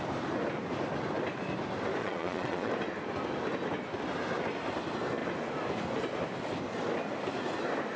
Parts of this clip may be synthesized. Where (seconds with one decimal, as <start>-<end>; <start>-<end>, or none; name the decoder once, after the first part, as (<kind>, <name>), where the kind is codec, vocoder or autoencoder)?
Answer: 2.0-2.7 (vocoder, Vocos)